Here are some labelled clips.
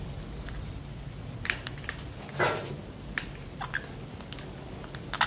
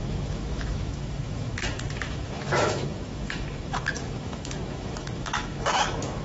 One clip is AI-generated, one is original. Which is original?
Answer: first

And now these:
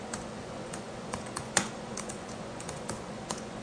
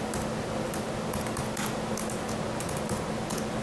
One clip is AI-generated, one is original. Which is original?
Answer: second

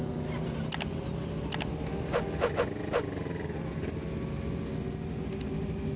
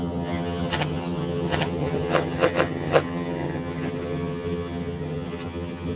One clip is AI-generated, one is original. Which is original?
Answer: first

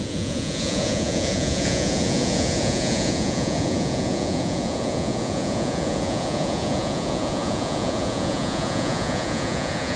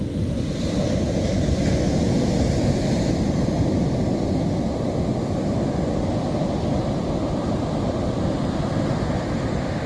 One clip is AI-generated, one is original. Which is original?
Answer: second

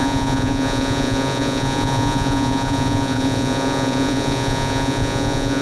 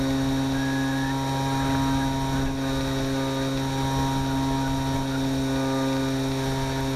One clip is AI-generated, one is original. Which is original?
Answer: second